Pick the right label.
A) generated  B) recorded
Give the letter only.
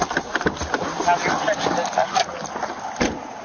B